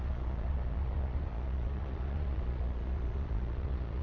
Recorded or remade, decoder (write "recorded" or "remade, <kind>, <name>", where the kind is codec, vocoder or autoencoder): remade, vocoder, Vocos